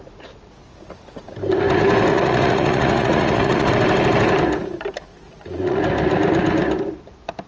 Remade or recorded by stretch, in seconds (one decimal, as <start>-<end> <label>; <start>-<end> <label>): 0.0-2.1 recorded; 2.1-3.7 remade; 3.7-5.1 recorded; 5.1-5.8 remade; 5.8-7.5 recorded